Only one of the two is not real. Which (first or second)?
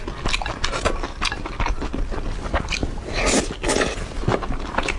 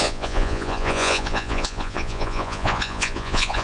second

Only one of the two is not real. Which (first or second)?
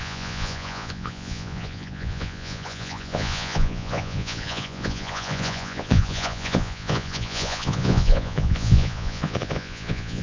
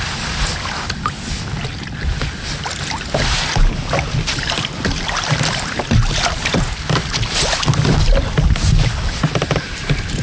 first